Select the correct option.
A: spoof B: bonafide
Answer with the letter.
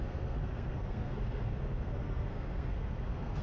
A